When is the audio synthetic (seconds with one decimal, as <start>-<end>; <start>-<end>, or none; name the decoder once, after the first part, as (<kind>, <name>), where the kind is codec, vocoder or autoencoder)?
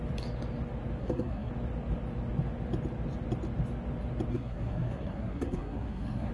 1.0-1.5 (codec, SNAC); 4.3-6.3